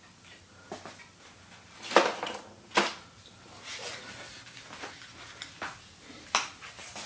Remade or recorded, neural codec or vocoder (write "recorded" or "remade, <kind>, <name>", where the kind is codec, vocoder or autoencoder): recorded